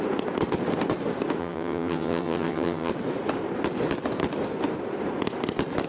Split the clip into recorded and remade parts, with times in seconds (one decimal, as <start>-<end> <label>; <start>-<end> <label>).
0.0-1.4 recorded; 1.4-2.9 remade; 2.9-5.9 recorded